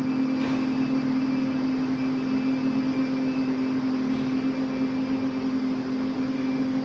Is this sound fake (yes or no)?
no